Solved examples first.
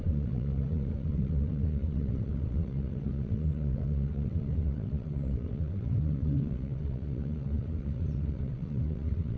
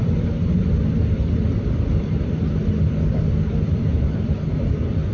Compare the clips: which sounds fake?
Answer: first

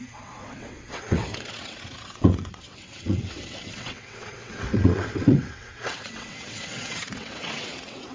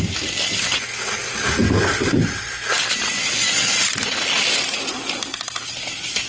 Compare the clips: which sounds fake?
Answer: first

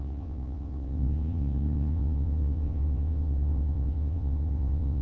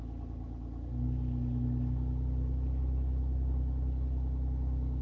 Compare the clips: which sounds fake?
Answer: first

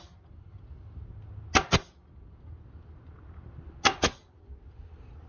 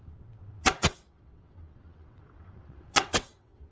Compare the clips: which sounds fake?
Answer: second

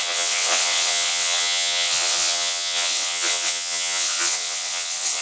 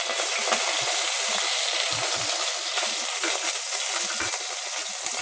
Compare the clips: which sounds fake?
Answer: first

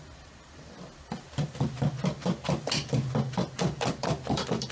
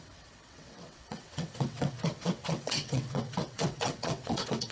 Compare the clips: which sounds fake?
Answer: second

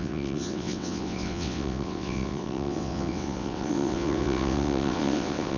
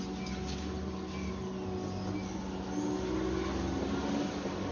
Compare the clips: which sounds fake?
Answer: first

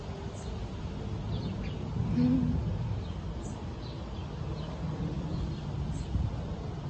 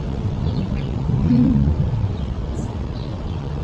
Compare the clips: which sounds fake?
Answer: second